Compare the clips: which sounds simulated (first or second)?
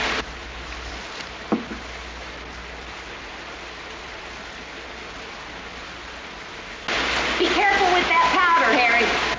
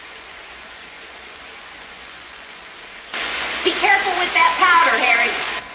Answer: second